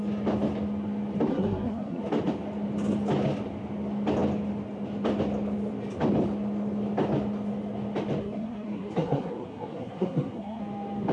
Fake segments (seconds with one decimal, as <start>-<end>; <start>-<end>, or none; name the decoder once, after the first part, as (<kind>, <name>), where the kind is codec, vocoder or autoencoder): 1.3-2.0 (codec, SNAC); 8.2-10.6